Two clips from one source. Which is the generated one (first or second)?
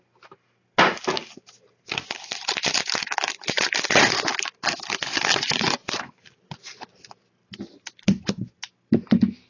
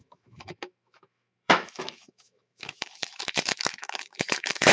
second